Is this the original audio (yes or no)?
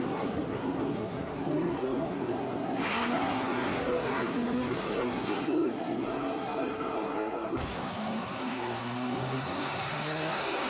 no